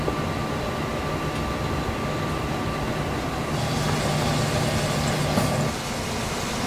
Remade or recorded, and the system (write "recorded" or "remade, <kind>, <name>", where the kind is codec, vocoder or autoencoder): recorded